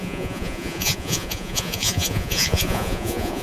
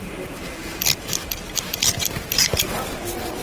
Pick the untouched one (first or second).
second